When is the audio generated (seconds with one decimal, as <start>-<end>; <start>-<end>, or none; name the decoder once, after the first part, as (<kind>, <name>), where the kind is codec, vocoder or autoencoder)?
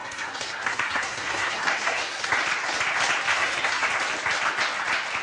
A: 0.0-2.3 (codec, SNAC); 3.3-3.9